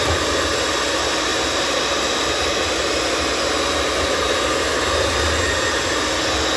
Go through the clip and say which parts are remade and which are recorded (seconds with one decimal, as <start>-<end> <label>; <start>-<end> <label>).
0.0-1.3 recorded; 1.3-2.7 remade; 2.7-6.6 recorded